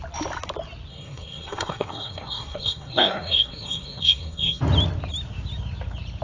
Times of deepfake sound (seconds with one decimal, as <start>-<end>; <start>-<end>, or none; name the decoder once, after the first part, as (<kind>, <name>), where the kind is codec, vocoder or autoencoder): 0.9-4.6 (codec, SNAC)